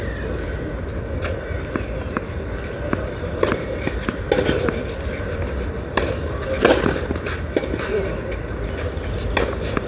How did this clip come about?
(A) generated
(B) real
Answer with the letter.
B